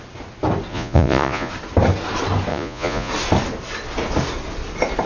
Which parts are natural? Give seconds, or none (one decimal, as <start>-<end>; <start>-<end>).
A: 0.0-0.7; 1.5-2.5; 3.1-5.1